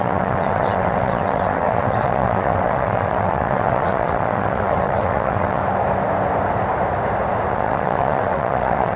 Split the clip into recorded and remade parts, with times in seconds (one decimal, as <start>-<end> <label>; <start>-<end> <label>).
0.0-5.6 remade; 5.6-7.5 recorded; 7.5-9.0 remade

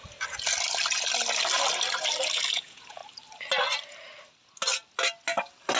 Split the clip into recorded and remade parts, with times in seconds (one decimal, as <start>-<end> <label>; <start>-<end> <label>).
0.0-2.5 recorded; 2.5-3.0 remade; 3.0-5.8 recorded

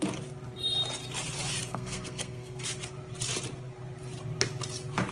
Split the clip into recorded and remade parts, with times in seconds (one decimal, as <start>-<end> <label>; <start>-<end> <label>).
0.0-1.7 recorded; 1.7-2.6 remade; 2.6-5.1 recorded

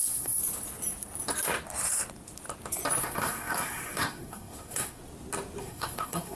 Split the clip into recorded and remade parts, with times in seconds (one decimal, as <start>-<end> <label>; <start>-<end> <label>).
0.0-0.4 remade; 0.4-3.0 recorded; 3.0-5.0 remade; 5.0-5.6 recorded; 5.6-6.4 remade

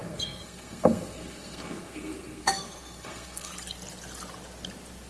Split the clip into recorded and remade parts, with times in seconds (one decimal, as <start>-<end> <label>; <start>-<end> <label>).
0.0-3.5 remade; 3.5-5.1 recorded

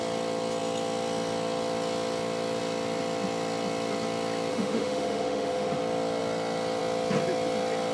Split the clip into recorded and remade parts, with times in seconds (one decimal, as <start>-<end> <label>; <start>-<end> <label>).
0.0-4.5 recorded; 4.5-5.8 remade; 5.8-7.9 recorded